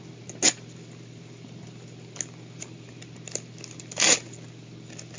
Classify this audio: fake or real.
real